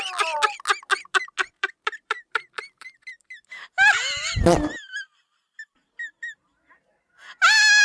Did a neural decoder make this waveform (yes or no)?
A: no